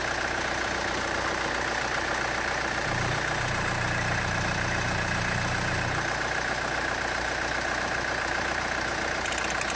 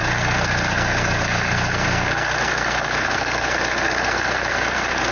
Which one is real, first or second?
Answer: first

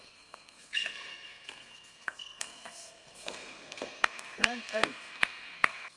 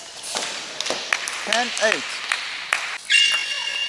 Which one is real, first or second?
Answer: second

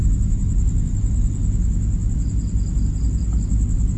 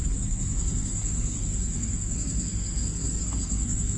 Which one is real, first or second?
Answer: first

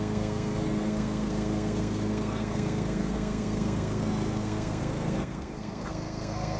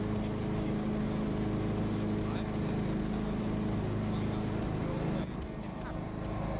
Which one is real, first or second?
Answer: second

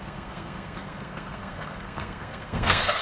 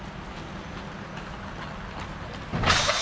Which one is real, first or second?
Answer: second